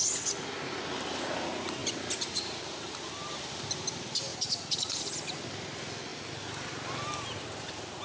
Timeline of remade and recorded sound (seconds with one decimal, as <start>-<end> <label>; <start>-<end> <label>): 0.0-4.3 recorded; 4.3-5.0 remade; 5.0-8.0 recorded